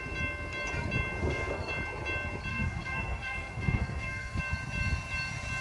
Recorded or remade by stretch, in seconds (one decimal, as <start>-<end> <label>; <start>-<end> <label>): 0.0-1.2 recorded; 1.2-1.7 remade; 1.7-2.5 recorded; 2.5-4.4 remade; 4.4-5.6 recorded